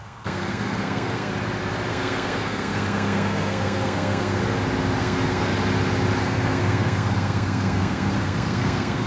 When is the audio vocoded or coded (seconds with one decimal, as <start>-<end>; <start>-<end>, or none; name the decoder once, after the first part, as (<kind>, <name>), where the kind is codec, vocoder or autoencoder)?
0.0-1.3 (codec, SNAC); 1.9-4.4; 5.0-5.5; 6.2-9.1